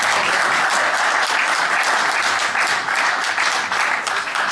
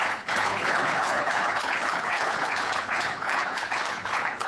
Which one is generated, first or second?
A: second